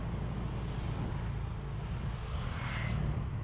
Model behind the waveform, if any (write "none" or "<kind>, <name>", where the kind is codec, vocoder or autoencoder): none